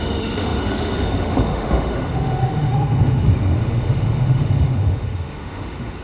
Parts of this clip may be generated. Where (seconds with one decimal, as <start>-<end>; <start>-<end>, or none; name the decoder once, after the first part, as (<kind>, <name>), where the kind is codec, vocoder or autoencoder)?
0.0-6.0 (autoencoder, DAC-VAE)